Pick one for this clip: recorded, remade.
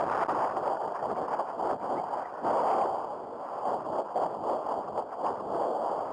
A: recorded